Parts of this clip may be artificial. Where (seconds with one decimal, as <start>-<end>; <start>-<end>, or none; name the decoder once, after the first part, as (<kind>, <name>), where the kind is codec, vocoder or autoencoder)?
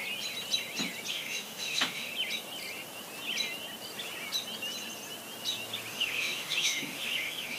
1.1-2.1 (autoencoder, DAC-VAE); 5.9-7.6